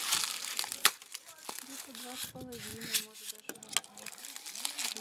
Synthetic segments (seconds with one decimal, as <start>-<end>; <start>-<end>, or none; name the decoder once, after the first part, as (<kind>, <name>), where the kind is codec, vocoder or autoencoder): none